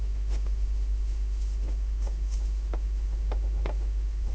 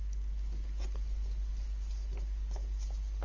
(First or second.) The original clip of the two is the second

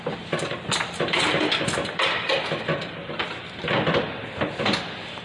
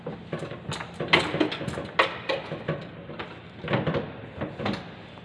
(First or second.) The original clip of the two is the second